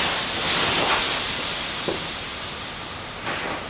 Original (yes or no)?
yes